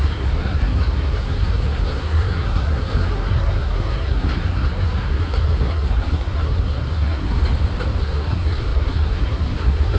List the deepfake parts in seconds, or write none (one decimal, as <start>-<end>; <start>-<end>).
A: 0.0-7.4; 8.0-10.0